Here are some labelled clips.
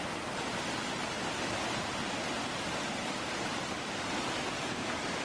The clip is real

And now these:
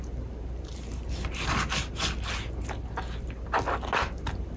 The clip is real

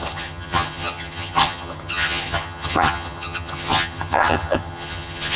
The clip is fake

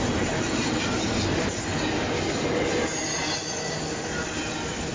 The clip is real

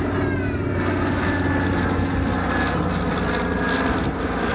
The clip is real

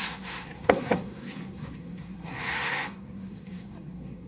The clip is fake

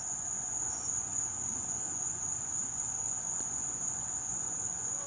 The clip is fake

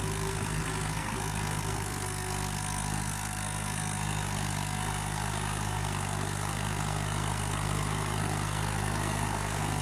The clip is fake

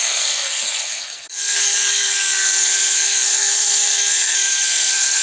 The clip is fake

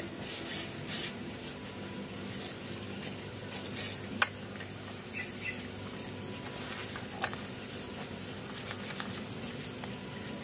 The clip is real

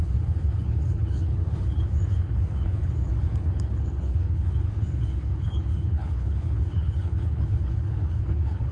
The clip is fake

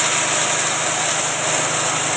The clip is real